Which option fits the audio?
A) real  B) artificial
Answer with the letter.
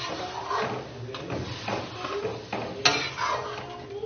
A